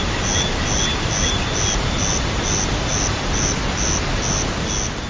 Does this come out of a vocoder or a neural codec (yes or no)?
no